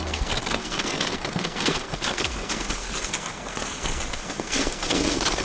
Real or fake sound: fake